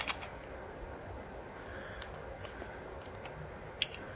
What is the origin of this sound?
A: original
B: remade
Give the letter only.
A